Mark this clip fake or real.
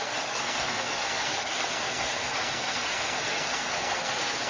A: fake